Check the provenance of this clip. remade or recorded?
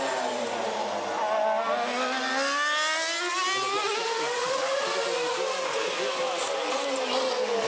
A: recorded